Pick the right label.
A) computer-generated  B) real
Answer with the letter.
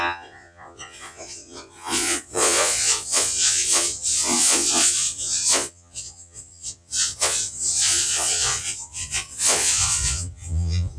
A